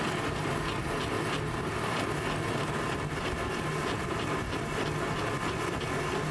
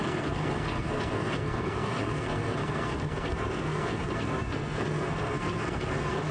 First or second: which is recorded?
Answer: first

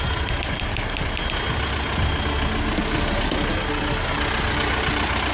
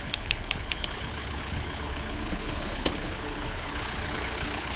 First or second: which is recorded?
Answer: first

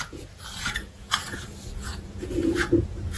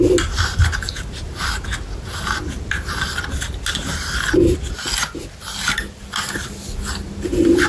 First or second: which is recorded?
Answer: second